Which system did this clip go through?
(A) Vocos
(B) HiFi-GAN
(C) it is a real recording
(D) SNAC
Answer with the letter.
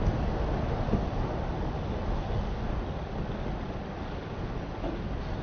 C